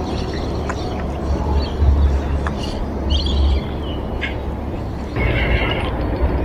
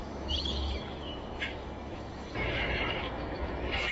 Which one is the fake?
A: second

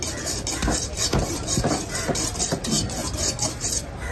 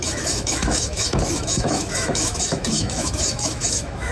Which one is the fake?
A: second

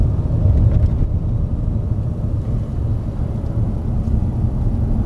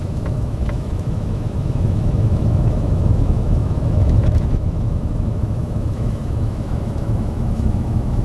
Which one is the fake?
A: second